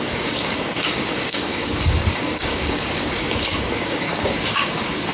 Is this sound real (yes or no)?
no